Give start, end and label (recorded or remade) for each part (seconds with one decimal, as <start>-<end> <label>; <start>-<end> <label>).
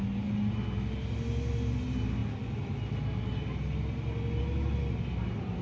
0.0-5.6 recorded